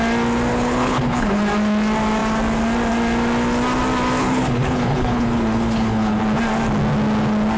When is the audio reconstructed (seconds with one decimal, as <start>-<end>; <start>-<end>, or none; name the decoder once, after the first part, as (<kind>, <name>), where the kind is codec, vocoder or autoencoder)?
0.5-1.4 (codec, HILCodec); 4.2-6.2